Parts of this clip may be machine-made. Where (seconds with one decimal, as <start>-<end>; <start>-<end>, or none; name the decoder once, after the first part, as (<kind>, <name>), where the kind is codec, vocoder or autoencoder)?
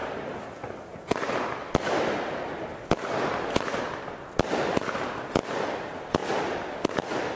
none